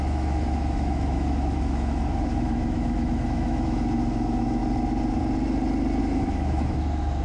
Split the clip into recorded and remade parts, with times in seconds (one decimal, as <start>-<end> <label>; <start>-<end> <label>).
0.0-4.6 remade; 4.6-6.0 recorded; 6.0-7.2 remade